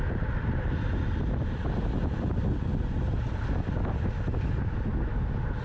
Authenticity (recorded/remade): recorded